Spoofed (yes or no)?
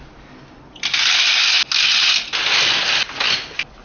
no